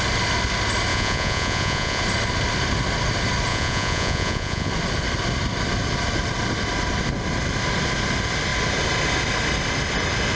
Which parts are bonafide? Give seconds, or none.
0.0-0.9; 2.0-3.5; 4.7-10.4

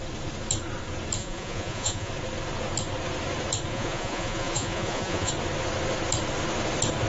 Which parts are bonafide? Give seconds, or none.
0.0-1.2; 2.1-3.7; 5.3-7.1